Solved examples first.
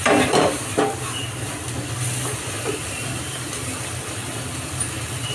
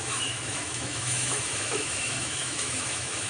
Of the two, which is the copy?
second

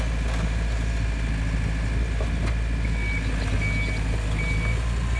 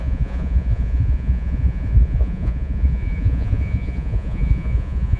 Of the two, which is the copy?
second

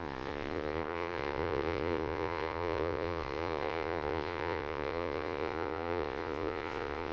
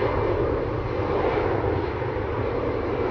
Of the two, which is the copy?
first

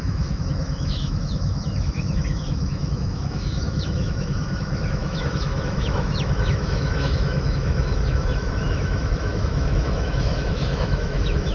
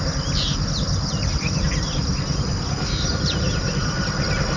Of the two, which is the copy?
first